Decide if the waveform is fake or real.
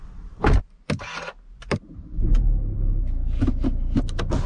real